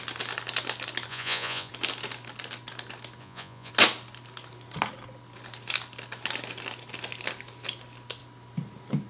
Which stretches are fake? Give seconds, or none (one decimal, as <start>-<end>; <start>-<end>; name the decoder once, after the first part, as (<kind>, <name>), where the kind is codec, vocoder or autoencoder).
1.1-1.7 (vocoder, Vocos); 3.2-3.7